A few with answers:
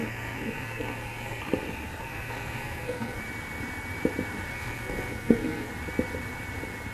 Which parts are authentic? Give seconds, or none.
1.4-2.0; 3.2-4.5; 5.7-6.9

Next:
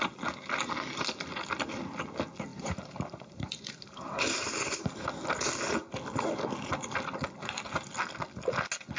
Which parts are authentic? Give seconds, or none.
0.0-2.5; 5.1-9.0

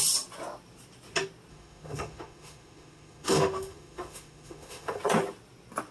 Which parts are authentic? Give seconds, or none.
0.0-1.5; 5.0-5.9

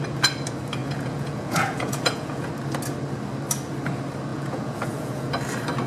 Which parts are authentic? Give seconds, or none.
0.0-0.8; 2.5-4.3; 5.3-5.9